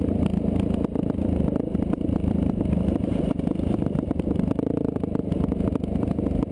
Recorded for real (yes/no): no